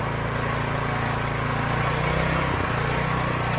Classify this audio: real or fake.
real